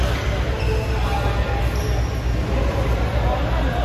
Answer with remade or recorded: recorded